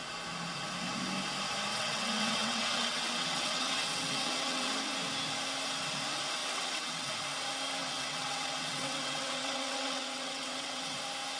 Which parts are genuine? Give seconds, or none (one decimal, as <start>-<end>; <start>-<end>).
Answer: 0.0-1.7; 4.7-6.4; 7.1-7.8; 11.0-11.4